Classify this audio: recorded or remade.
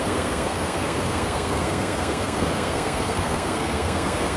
remade